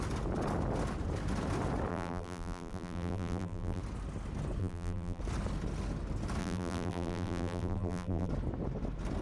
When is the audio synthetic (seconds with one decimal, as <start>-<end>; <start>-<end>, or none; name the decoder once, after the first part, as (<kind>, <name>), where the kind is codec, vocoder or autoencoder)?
1.9-3.8 (vocoder, BigVGAN v2); 4.6-5.2; 6.4-8.3